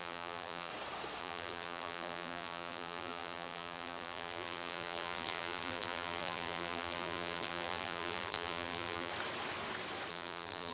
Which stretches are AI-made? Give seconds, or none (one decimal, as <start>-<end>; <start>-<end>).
0.0-0.7; 1.2-9.1; 10.1-10.7